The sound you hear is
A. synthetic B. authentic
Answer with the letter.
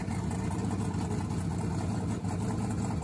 B